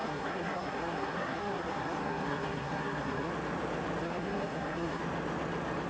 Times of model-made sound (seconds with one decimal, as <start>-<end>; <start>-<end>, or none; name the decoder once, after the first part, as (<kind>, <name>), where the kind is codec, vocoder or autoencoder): 0.0-3.3 (codec, SNAC); 4.0-5.0